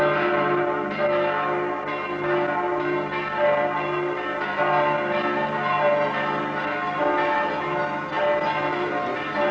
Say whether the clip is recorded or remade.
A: recorded